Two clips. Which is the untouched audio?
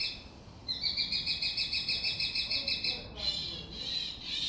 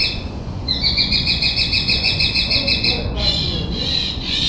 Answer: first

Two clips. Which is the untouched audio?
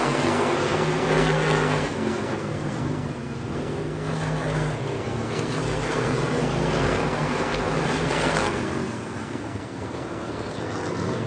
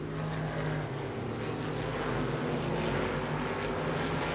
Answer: second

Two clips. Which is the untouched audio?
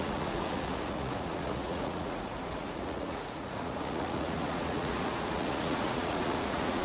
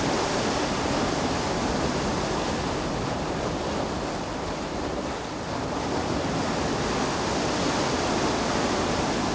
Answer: second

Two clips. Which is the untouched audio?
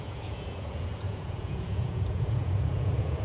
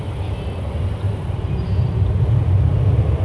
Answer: second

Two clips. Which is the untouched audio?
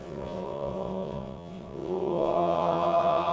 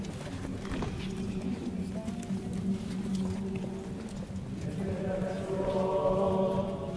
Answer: second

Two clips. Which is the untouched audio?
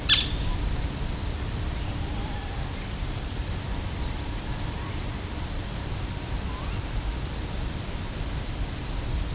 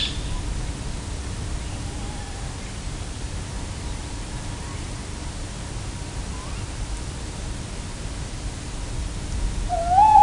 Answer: second